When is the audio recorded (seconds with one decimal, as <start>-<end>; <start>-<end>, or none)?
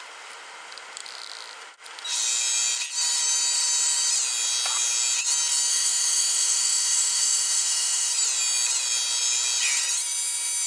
0.0-5.7; 8.1-10.7